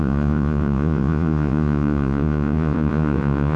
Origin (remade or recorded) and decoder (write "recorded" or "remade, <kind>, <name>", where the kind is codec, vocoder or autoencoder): remade, vocoder, Vocos